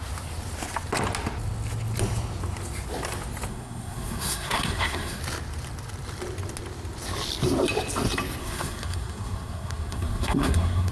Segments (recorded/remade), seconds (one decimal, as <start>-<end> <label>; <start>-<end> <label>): 0.0-3.5 recorded; 3.5-5.2 remade; 5.2-8.4 recorded; 8.4-10.9 remade